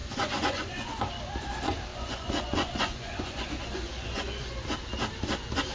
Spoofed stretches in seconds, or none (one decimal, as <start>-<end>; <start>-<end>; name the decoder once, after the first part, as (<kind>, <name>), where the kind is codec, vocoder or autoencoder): 0.0-1.0 (vocoder, Vocos); 1.9-4.6